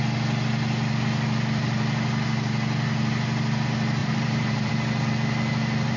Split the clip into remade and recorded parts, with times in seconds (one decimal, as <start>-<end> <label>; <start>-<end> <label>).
0.0-4.0 recorded; 4.0-4.7 remade; 4.7-6.0 recorded